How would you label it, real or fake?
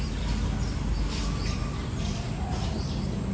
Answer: real